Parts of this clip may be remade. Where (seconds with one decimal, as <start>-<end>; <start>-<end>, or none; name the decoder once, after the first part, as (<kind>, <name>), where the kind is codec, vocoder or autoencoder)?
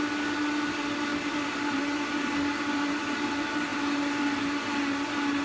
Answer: 1.1-1.8 (vocoder, BigVGAN v2)